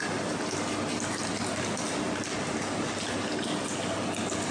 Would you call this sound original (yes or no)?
yes